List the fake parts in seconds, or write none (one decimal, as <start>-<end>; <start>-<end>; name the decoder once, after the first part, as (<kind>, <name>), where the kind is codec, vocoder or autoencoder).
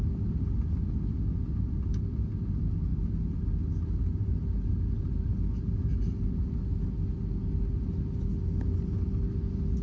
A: none